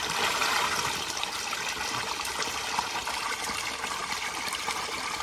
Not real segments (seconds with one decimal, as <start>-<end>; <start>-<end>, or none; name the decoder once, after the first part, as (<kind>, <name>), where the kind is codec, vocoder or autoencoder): 0.4-1.2 (vocoder, BigVGAN v2); 2.3-3.3; 4.0-4.6